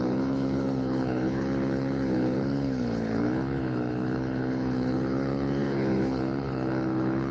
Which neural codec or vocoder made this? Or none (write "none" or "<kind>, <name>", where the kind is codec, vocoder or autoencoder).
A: codec, HILCodec